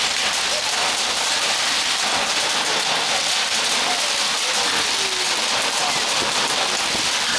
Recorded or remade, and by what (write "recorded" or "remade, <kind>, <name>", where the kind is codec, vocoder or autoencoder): recorded